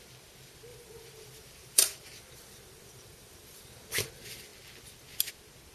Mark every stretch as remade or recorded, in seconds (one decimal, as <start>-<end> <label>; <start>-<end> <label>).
0.0-0.7 recorded; 0.7-4.1 remade; 4.1-5.7 recorded